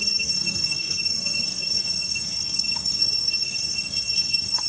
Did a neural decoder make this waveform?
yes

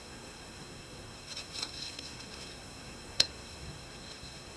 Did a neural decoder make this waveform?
yes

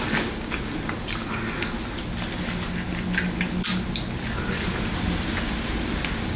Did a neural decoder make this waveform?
no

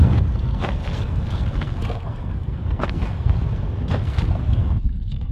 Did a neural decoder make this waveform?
yes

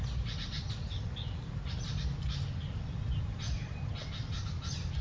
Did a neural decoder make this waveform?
no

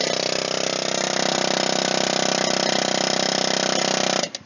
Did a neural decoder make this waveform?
no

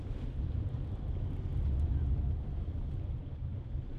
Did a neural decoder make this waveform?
no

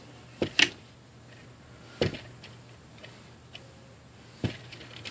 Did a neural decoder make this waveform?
no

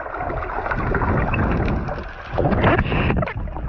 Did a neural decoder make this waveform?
no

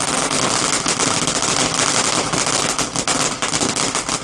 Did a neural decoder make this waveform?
no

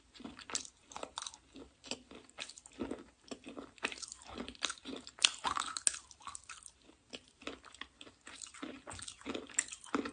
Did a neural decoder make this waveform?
no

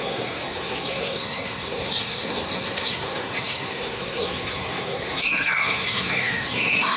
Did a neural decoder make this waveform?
yes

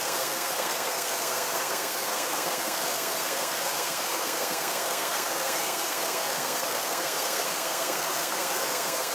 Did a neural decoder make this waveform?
yes